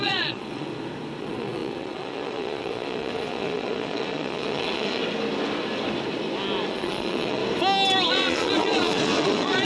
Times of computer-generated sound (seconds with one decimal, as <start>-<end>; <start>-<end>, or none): 0.0-0.7; 1.2-5.0; 6.7-7.4; 8.1-9.6

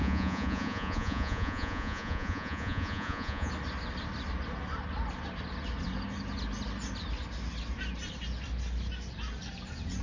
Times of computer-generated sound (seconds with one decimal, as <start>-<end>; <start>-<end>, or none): 0.0-3.5